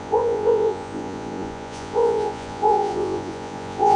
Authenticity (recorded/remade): remade